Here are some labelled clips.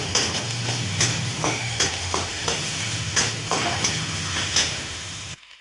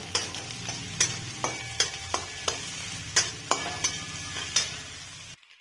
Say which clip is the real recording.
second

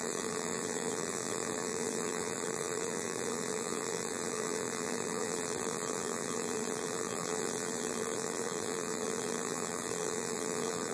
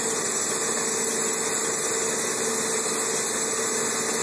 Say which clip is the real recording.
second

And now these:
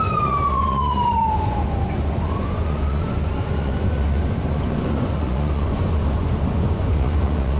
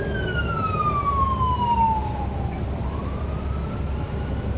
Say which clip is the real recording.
second